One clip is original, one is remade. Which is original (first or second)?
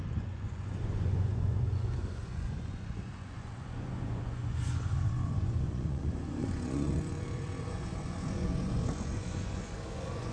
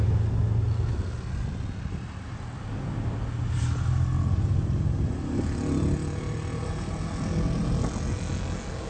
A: second